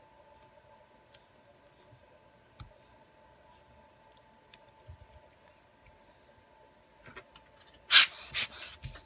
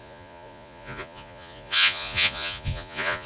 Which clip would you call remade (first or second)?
second